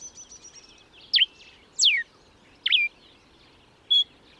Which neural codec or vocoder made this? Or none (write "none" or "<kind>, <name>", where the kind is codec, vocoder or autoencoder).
none